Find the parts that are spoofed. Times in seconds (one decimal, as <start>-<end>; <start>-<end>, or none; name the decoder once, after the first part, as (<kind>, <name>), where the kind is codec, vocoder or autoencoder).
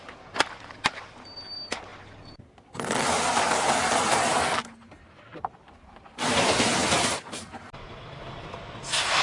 none